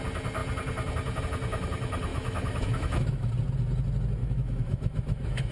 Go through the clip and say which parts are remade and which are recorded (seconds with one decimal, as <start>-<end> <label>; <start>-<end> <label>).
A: 0.0-2.1 recorded; 2.1-3.3 remade; 3.3-4.2 recorded; 4.2-5.5 remade